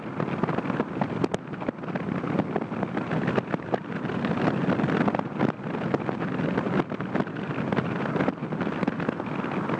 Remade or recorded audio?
recorded